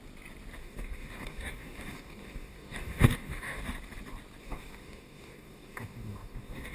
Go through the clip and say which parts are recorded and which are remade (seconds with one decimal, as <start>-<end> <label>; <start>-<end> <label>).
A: 0.0-0.6 recorded; 0.6-3.6 remade; 3.6-4.4 recorded; 4.4-6.7 remade